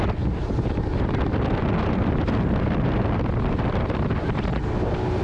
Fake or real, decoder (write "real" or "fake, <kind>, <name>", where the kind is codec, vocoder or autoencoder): real